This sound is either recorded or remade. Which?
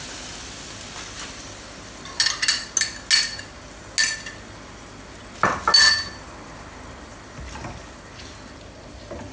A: recorded